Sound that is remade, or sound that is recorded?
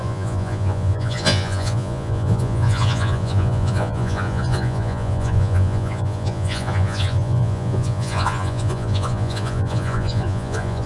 remade